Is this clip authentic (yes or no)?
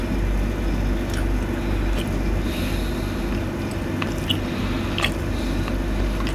yes